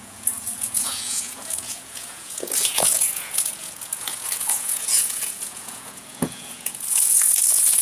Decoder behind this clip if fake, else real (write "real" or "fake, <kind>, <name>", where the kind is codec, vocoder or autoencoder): fake, vocoder, Vocos